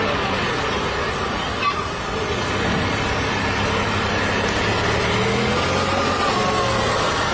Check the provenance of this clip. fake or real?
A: real